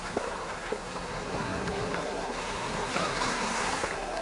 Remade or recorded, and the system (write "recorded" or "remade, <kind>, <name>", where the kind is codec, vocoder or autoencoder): remade, codec, SNAC